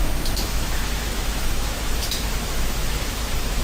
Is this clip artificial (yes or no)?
yes